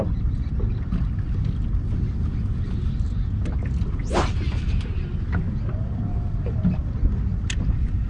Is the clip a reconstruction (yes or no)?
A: no